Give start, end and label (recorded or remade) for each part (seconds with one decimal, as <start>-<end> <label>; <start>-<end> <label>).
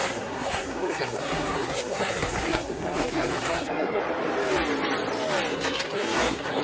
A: 0.0-4.0 remade; 4.0-5.5 recorded; 5.5-6.6 remade